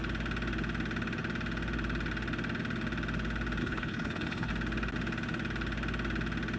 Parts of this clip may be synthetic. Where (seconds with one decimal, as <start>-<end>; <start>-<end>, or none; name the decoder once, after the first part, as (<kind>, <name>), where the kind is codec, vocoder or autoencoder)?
3.6-4.5 (codec, HILCodec)